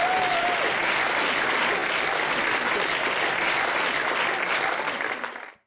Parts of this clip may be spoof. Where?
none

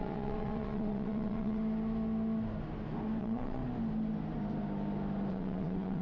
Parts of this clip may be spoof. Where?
0.0-1.6 (vocoder, WaveNeXt); 3.2-3.6; 5.3-6.0

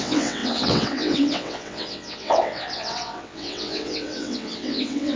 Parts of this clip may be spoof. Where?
0.0-5.2 (vocoder, WaveNeXt)

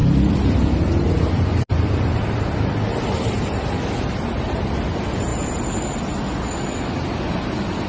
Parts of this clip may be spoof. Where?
none

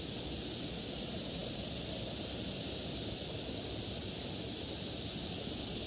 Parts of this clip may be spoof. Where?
none

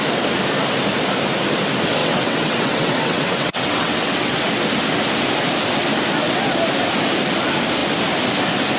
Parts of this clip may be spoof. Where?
2.0-4.5 (vocoder, WaveNeXt)

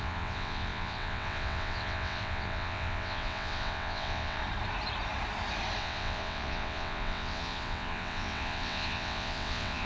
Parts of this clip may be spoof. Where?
0.0-4.4 (vocoder, WaveNeXt); 5.8-9.9

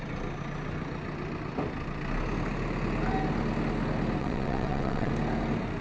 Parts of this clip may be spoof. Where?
4.2-5.1 (vocoder, WaveNeXt)